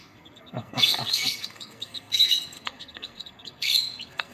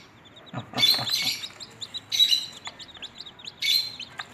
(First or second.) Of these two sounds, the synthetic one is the first